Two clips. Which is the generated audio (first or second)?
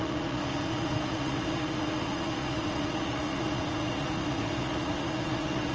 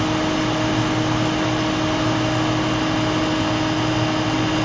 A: first